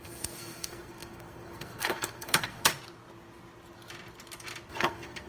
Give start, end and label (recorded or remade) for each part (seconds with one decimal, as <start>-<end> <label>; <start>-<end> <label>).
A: 0.0-2.7 remade; 2.7-4.7 recorded; 4.7-5.3 remade